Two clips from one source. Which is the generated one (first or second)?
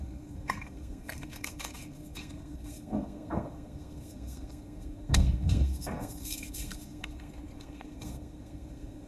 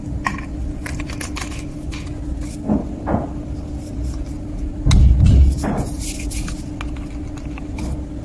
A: first